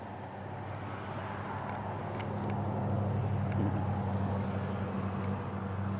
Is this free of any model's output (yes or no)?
yes